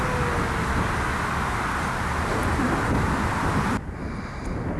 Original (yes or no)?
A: yes